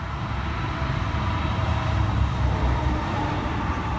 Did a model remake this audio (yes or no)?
yes